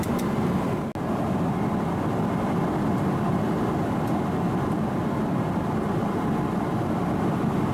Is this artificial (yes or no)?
no